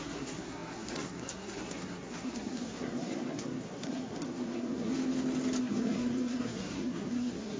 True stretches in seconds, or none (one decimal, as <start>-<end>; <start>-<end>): 4.9-5.6